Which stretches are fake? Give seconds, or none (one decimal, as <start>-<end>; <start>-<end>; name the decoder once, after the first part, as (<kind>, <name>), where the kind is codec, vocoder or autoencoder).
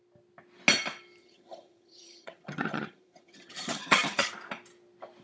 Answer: 1.2-4.3 (vocoder, HiFi-GAN)